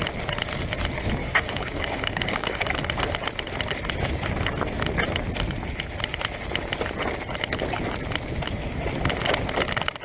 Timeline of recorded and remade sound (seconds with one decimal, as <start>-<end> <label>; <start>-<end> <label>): 0.0-1.2 recorded; 1.2-2.7 remade; 2.7-10.0 recorded